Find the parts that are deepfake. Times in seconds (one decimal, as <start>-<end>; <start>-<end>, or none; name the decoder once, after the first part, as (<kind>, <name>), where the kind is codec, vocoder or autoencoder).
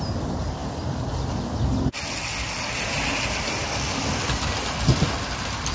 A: none